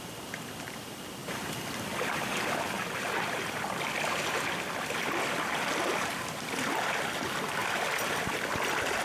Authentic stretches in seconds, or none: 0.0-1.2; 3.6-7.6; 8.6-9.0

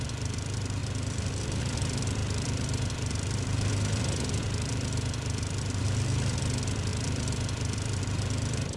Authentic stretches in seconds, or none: none

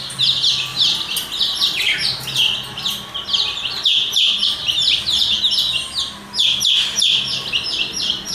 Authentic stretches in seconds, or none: 0.0-3.9; 5.4-8.3

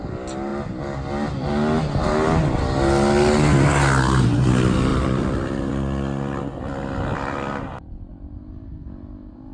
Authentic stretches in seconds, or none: 0.0-4.9; 5.7-9.5